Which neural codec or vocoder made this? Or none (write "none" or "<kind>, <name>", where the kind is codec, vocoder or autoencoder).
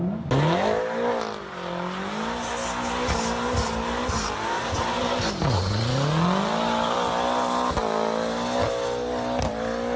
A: none